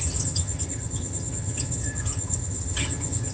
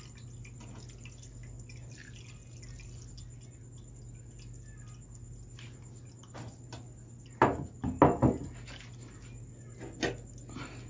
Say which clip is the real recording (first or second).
second